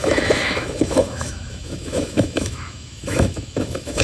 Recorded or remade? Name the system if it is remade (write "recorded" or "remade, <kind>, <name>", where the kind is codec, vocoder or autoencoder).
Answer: remade, autoencoder, DAC-VAE